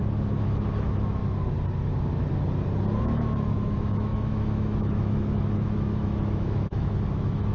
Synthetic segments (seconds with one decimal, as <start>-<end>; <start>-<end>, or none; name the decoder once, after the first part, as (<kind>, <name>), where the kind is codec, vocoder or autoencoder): 0.0-1.2 (autoencoder, DAC-VAE); 3.0-7.5